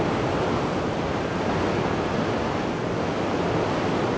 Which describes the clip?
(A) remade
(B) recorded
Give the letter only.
B